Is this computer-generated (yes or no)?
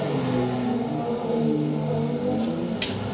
no